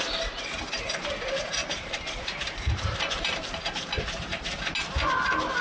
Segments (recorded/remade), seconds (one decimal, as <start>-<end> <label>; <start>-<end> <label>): 0.0-1.6 recorded; 1.6-3.9 remade; 3.9-5.6 recorded